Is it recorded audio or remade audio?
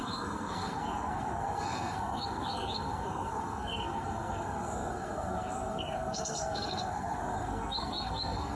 remade